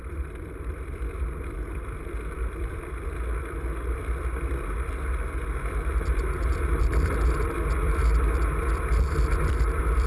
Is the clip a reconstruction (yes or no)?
yes